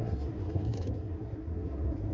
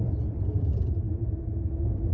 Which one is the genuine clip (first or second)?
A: second